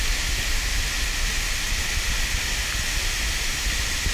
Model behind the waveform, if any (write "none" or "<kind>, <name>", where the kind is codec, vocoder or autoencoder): none